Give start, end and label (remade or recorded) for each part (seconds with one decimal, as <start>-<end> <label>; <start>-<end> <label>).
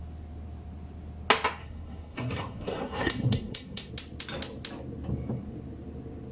0.0-1.6 recorded; 1.6-3.9 remade; 3.9-6.3 recorded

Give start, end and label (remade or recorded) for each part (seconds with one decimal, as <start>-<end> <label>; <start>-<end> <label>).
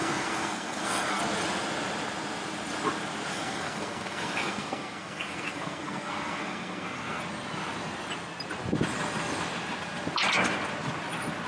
0.0-1.2 remade; 1.2-3.3 recorded; 3.3-7.2 remade; 7.2-11.5 recorded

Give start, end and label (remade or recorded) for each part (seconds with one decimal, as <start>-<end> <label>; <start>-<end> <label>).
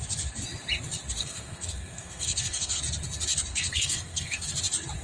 0.0-1.2 recorded; 1.2-2.8 remade; 2.8-3.5 recorded; 3.5-4.5 remade; 4.5-5.0 recorded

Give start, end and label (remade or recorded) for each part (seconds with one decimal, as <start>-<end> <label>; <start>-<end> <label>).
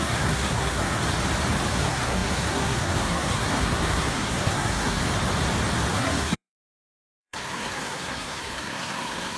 0.0-1.0 remade; 1.0-1.7 recorded; 1.7-5.0 remade; 5.0-6.0 recorded; 6.0-9.4 remade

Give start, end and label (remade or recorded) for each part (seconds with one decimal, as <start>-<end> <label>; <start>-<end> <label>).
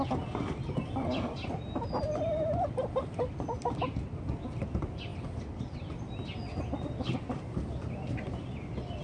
0.0-9.0 recorded